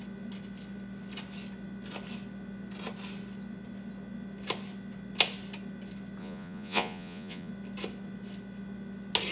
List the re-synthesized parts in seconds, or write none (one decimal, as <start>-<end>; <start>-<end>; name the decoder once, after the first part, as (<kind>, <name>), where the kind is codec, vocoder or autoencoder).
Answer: 6.2-7.5 (vocoder, Vocos)